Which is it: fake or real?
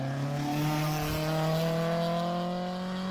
real